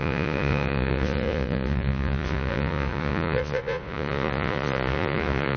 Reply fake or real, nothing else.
fake